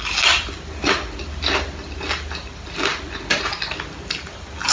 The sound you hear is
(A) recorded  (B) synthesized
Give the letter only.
A